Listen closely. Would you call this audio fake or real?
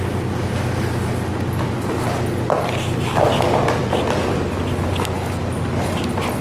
real